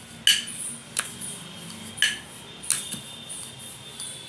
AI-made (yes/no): no